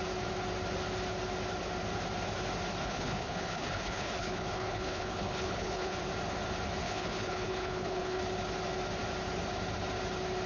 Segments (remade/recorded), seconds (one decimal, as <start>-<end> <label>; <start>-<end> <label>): 0.0-2.8 recorded; 2.8-6.0 remade; 6.0-6.8 recorded; 6.8-8.2 remade; 8.2-10.5 recorded